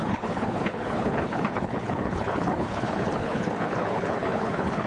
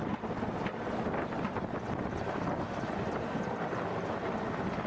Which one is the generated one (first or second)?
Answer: first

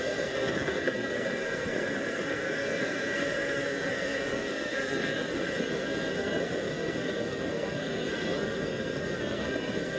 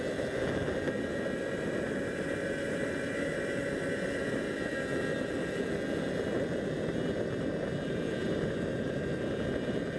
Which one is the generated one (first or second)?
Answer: first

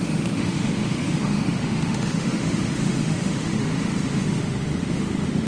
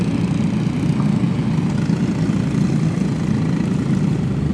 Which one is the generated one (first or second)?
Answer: first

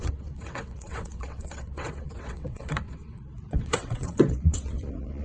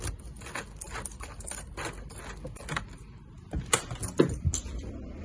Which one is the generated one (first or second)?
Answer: first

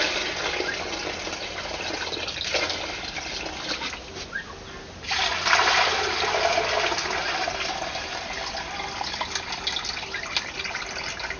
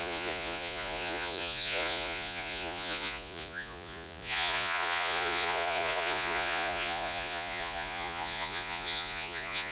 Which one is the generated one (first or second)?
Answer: second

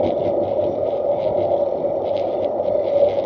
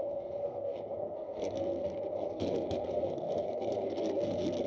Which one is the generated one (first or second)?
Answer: second